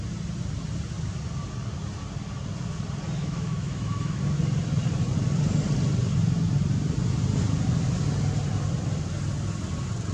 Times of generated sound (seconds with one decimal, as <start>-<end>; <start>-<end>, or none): 3.2-4.2